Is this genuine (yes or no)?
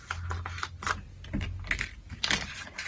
yes